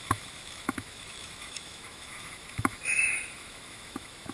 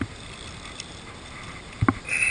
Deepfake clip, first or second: first